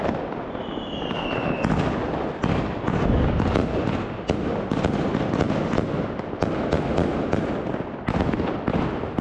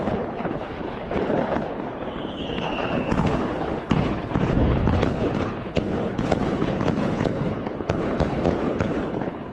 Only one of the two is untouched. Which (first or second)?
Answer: first